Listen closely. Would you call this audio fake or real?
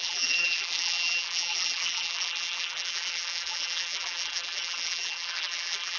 fake